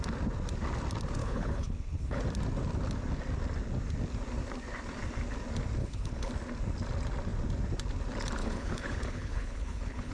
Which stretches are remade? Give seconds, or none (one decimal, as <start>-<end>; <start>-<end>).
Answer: 1.2-2.2; 5.8-6.3; 8.4-10.1